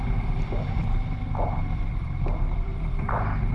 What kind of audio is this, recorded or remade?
remade